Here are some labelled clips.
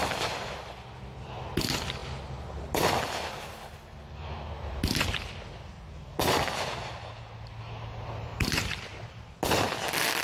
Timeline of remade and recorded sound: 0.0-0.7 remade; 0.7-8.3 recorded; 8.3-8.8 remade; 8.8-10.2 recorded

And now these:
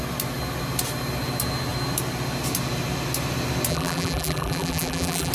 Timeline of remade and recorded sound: 0.0-3.7 recorded; 3.7-5.3 remade

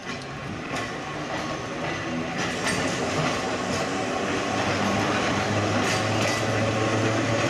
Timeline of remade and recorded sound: 0.0-7.5 recorded

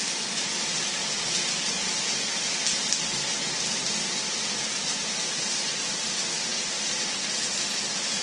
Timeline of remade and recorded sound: 0.0-8.2 recorded

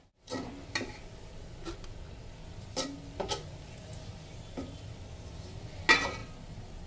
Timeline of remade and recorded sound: 0.0-6.9 recorded